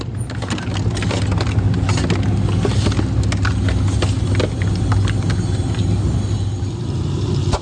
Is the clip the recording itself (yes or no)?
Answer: yes